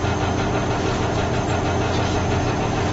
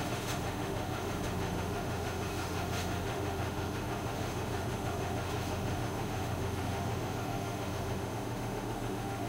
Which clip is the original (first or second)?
first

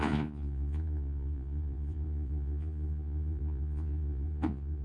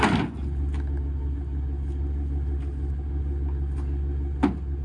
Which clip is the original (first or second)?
second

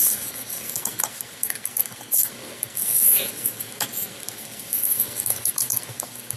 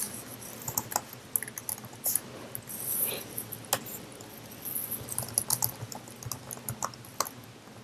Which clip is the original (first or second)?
second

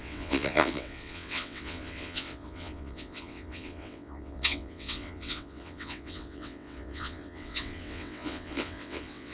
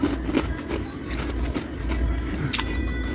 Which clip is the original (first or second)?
second